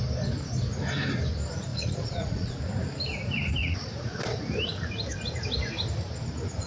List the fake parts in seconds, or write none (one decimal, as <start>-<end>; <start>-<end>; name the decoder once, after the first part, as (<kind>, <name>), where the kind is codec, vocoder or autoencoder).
1.7-2.6 (vocoder, Vocos); 3.6-4.2